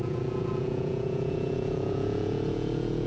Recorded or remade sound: remade